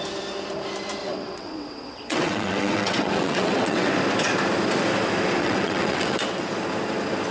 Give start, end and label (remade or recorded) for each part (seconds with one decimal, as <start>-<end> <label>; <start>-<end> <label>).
0.0-1.0 recorded; 1.0-3.9 remade; 3.9-5.4 recorded; 5.4-6.5 remade; 6.5-7.3 recorded